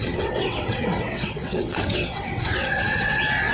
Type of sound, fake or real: fake